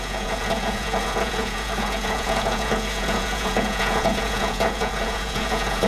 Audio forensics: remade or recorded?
remade